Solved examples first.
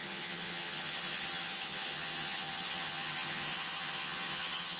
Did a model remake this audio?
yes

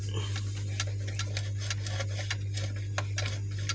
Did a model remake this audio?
no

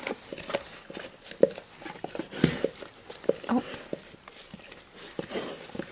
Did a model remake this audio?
no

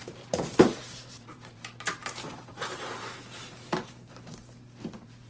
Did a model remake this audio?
yes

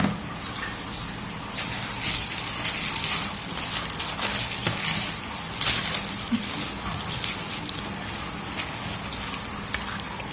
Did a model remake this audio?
no